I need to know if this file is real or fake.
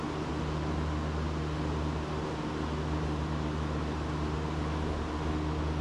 real